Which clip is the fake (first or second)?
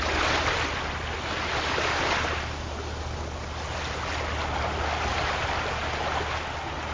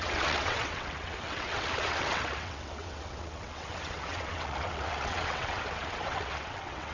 second